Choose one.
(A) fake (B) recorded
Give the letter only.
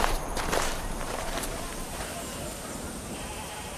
A